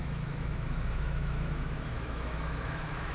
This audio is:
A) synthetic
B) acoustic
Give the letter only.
A